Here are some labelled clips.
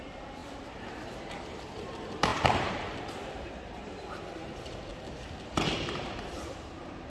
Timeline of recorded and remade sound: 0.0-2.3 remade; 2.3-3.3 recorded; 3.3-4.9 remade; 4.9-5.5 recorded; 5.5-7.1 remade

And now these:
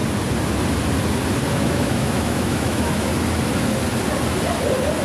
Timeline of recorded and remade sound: 0.0-1.5 recorded; 1.5-3.1 remade; 3.1-5.0 recorded

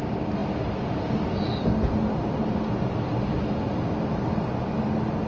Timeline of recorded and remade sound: 0.0-5.3 recorded

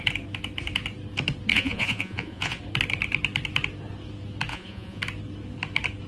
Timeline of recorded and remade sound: 0.0-1.5 recorded; 1.5-2.6 remade; 2.6-4.5 recorded; 4.5-5.0 remade; 5.0-6.1 recorded

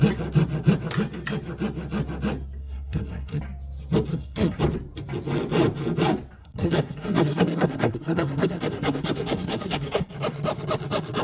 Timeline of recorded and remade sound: 0.0-2.6 recorded; 2.6-3.4 remade; 3.4-4.1 recorded; 4.1-4.6 remade; 4.6-6.4 recorded; 6.4-10.1 remade; 10.1-11.2 recorded

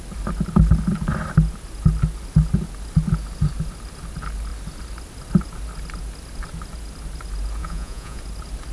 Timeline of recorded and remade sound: 0.0-7.6 recorded; 7.6-8.2 remade; 8.2-8.7 recorded